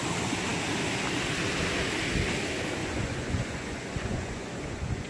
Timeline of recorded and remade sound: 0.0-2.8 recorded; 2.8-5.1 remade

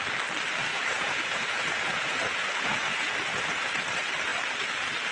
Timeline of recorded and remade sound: 0.0-0.7 recorded; 0.7-3.8 remade; 3.8-5.1 recorded

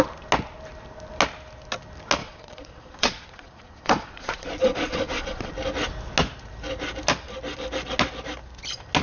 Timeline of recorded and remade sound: 0.0-2.2 recorded; 2.2-5.5 remade; 5.5-9.0 recorded

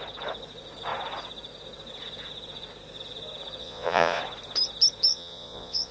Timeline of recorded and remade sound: 0.0-3.6 recorded; 3.6-4.2 remade; 4.2-5.1 recorded; 5.1-5.9 remade

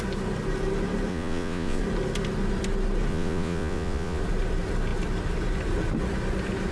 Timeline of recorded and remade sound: 0.0-1.1 recorded; 1.1-1.8 remade; 1.8-3.1 recorded; 3.1-4.2 remade; 4.2-6.7 recorded